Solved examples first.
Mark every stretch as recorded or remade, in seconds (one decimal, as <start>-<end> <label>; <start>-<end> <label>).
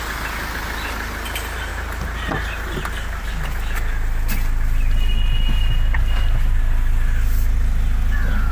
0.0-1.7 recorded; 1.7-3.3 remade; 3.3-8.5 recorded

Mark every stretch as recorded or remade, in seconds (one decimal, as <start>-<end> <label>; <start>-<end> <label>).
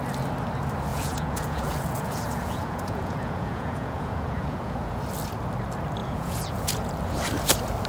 0.0-0.9 recorded; 0.9-5.0 remade; 5.0-6.0 recorded; 6.0-6.9 remade; 6.9-7.9 recorded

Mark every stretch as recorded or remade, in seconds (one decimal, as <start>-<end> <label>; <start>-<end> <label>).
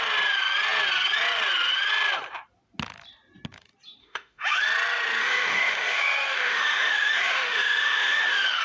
0.0-4.0 recorded; 4.0-4.6 remade; 4.6-5.2 recorded; 5.2-8.6 remade